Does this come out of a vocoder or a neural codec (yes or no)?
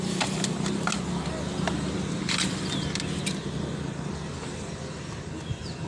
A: no